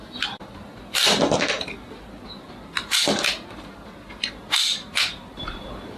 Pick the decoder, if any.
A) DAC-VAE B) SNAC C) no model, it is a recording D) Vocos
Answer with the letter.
C